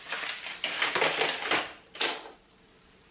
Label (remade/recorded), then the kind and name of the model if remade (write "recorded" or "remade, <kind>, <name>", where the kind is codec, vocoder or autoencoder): recorded